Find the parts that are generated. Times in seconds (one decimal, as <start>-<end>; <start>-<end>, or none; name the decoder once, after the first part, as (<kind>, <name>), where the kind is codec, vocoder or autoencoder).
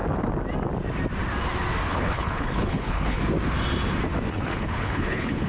1.9-3.2 (codec, HILCodec); 4.3-5.5